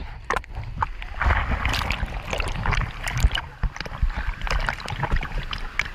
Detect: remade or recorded recorded